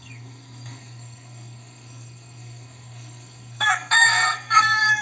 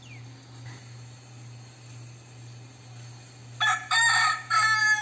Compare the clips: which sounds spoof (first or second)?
first